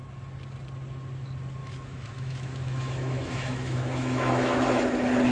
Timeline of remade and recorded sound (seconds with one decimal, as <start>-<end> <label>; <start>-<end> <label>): 0.0-1.6 recorded; 1.6-4.8 remade; 4.8-5.3 recorded